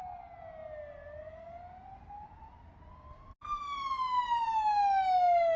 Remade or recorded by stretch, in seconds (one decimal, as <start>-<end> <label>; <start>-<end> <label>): 0.0-5.6 recorded